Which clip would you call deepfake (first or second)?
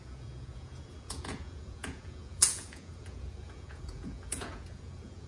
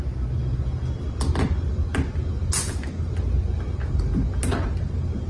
first